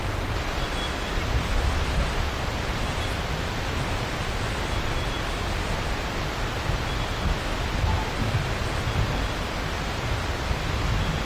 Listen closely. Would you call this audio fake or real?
real